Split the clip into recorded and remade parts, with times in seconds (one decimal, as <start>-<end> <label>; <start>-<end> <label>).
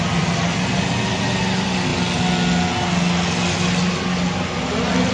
0.0-5.1 recorded